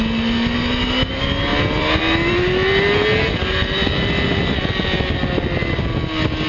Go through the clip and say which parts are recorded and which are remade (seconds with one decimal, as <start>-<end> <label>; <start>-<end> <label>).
0.0-6.5 recorded